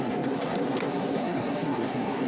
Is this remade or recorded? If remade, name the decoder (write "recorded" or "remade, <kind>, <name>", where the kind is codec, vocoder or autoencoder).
remade, codec, SNAC